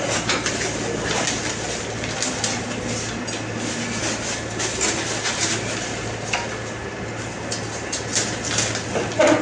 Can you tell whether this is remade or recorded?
recorded